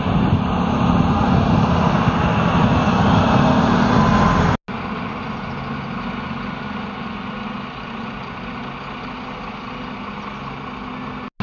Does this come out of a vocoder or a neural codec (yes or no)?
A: no